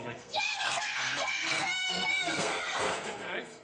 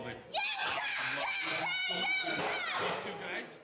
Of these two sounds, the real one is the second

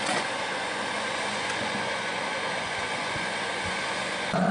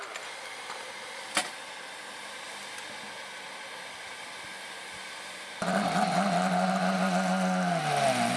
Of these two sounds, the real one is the second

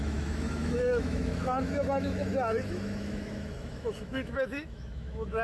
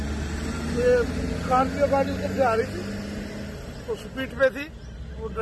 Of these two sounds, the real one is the second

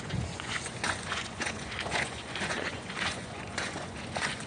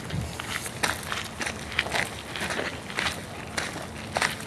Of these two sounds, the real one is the second